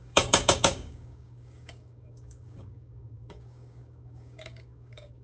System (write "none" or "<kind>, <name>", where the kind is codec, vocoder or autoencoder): codec, DAC